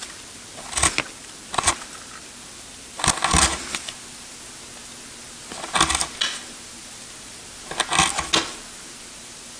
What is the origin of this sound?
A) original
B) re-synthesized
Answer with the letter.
A